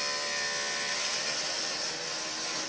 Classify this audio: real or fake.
real